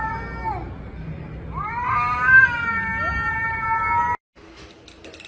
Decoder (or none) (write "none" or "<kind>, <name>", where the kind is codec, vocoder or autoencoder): none